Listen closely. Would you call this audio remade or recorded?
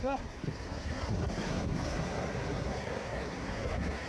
remade